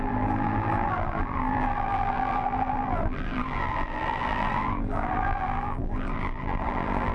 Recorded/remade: remade